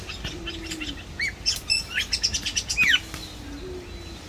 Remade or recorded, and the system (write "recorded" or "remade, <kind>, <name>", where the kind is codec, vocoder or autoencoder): recorded